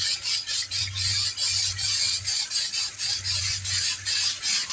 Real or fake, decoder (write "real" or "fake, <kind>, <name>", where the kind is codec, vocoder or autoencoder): real